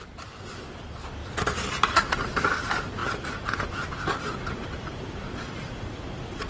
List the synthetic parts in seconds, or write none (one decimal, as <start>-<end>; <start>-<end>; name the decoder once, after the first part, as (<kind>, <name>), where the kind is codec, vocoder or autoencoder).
0.0-1.2 (vocoder, BigVGAN v2); 2.3-6.5